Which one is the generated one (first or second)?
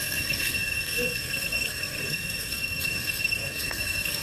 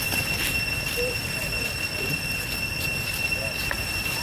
first